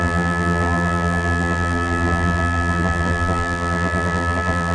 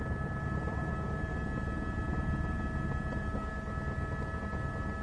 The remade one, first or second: first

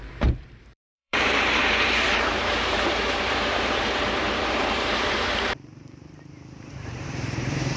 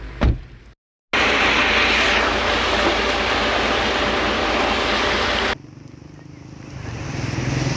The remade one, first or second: first